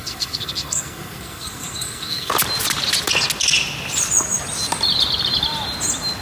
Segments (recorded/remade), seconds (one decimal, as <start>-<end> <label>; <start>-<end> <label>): 0.0-2.3 remade; 2.3-6.2 recorded